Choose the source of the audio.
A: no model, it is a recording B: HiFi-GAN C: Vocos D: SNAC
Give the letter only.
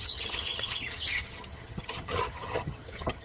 B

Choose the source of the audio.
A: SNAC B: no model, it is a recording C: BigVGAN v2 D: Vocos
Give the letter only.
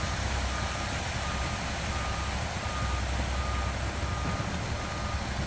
B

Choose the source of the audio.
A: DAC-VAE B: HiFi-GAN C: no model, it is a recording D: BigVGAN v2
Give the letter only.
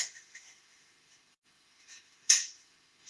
A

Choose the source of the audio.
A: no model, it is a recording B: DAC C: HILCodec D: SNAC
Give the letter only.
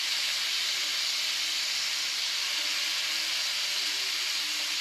A